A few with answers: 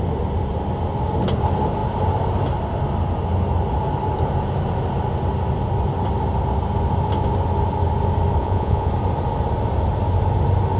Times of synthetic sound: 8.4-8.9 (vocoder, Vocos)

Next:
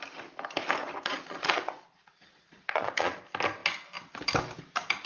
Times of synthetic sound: 0.8-3.2 (vocoder, Vocos)

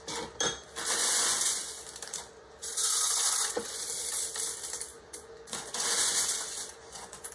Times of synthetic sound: 1.0-1.8 (vocoder, Vocos); 2.6-3.8; 4.9-7.3

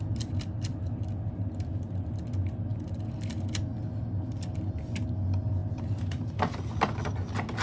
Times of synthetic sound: none

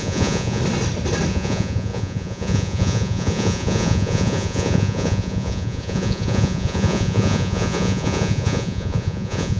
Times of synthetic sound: 0.0-0.6 (vocoder, Vocos); 1.3-9.6

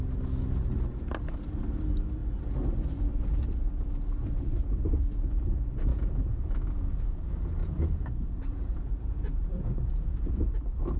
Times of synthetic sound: 5.9-6.9 (vocoder, Vocos); 7.6-10.5